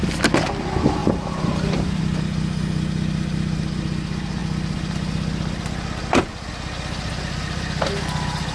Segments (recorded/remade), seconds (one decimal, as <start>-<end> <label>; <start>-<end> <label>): 0.0-1.0 recorded; 1.0-2.0 remade; 2.0-8.5 recorded